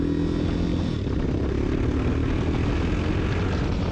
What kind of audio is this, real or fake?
real